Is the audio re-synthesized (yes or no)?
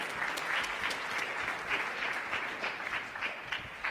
no